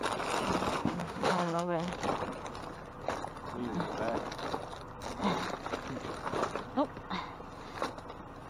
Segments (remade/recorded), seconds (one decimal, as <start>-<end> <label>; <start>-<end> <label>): 0.0-0.8 recorded; 0.8-1.9 remade; 1.9-8.5 recorded